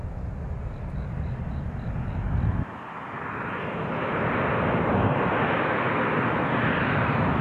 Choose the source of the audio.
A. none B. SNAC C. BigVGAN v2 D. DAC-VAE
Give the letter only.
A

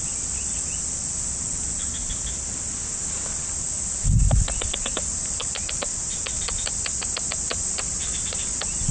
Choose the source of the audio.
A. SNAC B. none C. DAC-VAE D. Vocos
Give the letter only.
B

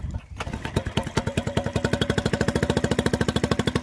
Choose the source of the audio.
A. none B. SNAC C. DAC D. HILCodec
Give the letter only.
A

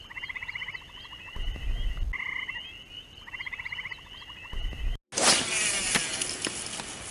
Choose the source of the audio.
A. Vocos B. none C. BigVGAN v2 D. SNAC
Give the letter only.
B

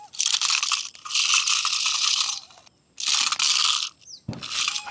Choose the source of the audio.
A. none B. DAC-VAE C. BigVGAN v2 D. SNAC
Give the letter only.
A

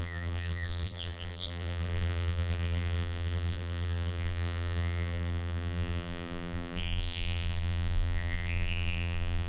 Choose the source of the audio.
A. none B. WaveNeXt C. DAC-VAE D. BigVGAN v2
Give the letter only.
D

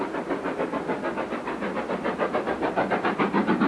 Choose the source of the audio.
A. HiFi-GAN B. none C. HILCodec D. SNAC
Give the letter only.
B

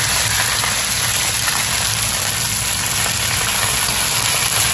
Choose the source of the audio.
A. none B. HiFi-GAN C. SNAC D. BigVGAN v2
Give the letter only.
A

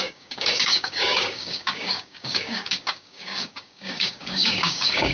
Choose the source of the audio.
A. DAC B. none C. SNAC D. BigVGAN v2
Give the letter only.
A